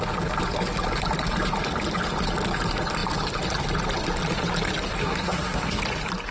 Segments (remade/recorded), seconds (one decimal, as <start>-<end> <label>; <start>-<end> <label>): 0.0-5.0 recorded; 5.0-5.8 remade; 5.8-6.3 recorded

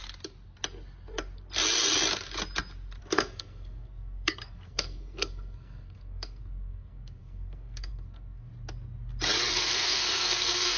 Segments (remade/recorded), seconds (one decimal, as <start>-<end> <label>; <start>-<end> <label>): 0.0-3.0 recorded; 3.0-8.5 remade; 8.5-9.5 recorded; 9.5-10.8 remade

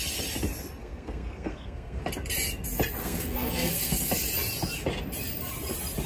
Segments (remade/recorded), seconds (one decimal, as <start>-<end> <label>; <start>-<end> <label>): 0.0-0.8 recorded; 0.8-2.0 remade; 2.0-3.0 recorded; 3.0-4.1 remade; 4.1-6.1 recorded

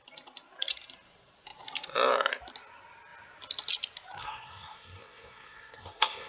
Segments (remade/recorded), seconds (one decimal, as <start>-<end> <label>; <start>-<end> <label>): 0.0-4.2 recorded; 4.2-6.3 remade

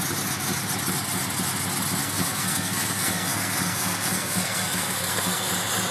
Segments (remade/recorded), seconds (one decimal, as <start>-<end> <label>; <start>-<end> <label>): 0.0-2.0 recorded; 2.0-5.5 remade; 5.5-5.9 recorded